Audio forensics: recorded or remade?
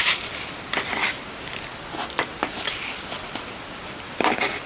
recorded